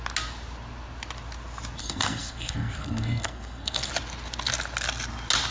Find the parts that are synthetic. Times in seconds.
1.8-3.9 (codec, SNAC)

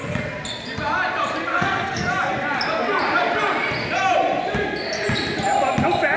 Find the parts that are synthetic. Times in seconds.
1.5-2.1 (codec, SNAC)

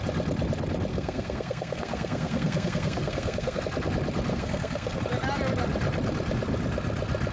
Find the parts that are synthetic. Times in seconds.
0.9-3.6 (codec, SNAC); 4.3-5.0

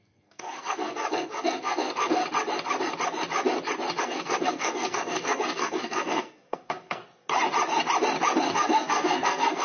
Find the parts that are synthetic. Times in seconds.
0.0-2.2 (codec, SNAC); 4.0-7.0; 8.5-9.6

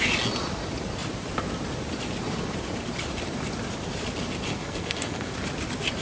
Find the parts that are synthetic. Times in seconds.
4.5-5.3 (codec, SNAC)

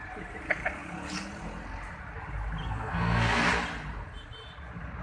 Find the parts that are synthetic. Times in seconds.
2.6-3.5 (codec, SNAC)